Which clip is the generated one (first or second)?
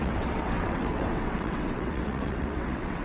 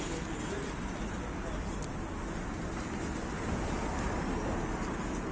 first